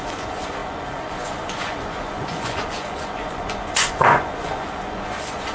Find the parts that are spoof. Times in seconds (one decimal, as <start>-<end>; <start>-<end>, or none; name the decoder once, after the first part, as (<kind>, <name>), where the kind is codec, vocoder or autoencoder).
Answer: 0.0-5.5 (vocoder, Vocos)